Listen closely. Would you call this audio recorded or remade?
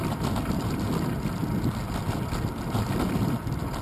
recorded